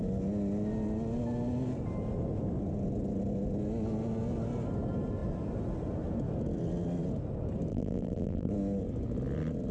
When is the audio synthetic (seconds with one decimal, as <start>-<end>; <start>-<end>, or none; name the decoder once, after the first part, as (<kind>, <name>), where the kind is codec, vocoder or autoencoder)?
7.7-8.5 (vocoder, BigVGAN v2)